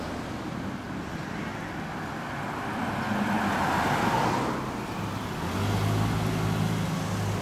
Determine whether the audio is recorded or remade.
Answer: recorded